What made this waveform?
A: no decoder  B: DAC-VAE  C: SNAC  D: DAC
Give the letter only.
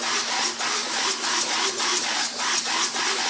A